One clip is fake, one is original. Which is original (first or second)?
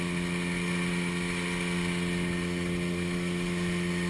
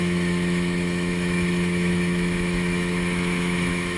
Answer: first